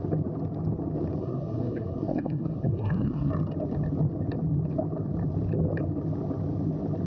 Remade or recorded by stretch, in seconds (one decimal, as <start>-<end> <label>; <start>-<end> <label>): 0.0-1.2 recorded; 1.2-3.3 remade; 3.3-7.1 recorded